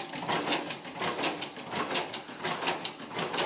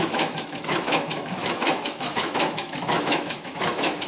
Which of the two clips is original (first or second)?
first